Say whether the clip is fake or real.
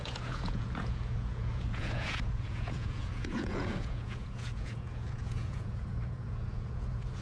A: fake